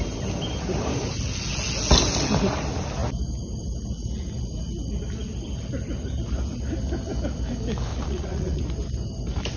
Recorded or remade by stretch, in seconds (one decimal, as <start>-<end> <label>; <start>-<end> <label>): 0.0-7.9 recorded; 7.9-8.7 remade; 8.7-9.6 recorded